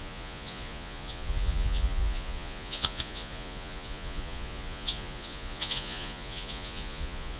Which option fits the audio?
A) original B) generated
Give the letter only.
B